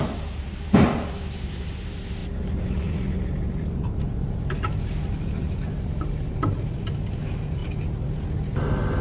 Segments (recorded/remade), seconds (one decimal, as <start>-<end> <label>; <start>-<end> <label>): 0.0-7.6 remade; 7.6-9.0 recorded